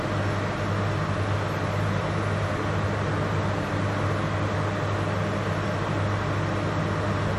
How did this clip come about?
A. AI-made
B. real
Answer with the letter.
B